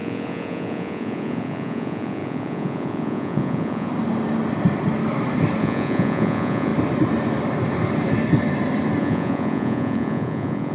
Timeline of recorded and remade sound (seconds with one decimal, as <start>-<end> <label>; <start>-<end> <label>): 0.0-3.9 remade; 3.9-5.6 recorded; 5.6-6.7 remade; 6.7-9.0 recorded; 9.0-10.7 remade